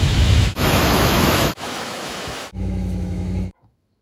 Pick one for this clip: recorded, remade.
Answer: remade